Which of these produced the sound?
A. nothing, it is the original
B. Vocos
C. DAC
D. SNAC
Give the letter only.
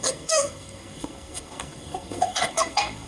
D